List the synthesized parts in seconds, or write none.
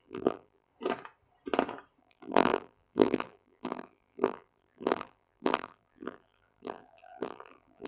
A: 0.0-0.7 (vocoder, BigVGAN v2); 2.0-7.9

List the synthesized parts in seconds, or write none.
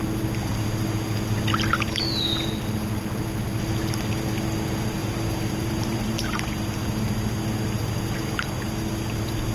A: 5.0-6.4 (vocoder, BigVGAN v2)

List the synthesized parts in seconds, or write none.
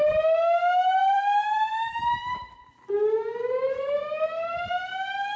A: 1.0-2.0 (vocoder, BigVGAN v2)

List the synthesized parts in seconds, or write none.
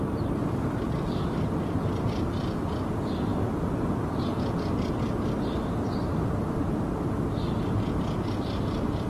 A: 0.0-3.3 (vocoder, BigVGAN v2); 5.5-9.1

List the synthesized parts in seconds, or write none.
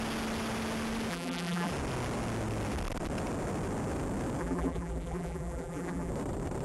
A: 1.1-1.7 (vocoder, BigVGAN v2); 4.4-6.1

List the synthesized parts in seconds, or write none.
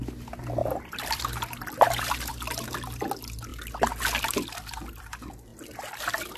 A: 0.6-2.3 (vocoder, BigVGAN v2)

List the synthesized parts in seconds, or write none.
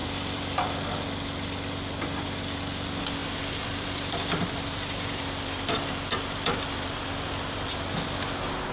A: 0.0-0.6 (vocoder, BigVGAN v2); 3.2-7.7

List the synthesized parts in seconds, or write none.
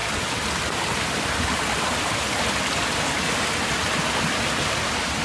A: none